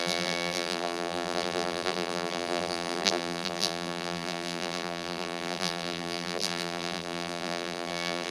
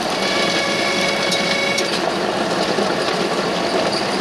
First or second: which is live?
second